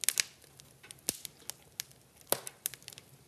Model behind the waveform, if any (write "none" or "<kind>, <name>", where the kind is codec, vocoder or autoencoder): none